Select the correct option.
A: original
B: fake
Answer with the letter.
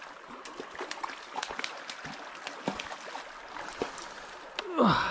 A